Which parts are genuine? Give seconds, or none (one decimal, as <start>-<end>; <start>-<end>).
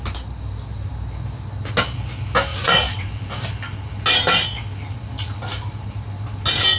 0.0-2.5; 3.1-6.8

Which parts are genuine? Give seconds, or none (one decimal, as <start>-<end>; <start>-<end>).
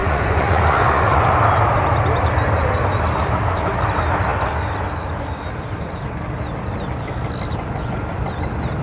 1.3-8.8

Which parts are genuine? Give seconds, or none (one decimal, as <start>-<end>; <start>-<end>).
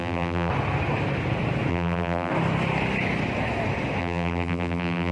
0.5-1.7; 2.3-4.0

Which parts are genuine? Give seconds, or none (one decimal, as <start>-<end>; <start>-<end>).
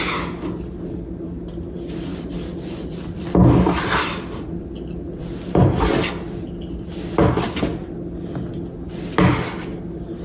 0.0-2.1; 6.1-10.2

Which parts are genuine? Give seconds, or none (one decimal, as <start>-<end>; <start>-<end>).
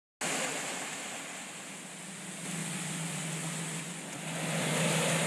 0.0-2.6; 4.8-5.3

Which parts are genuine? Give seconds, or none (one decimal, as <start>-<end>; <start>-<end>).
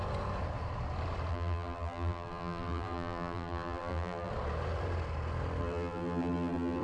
0.0-1.3; 4.3-5.6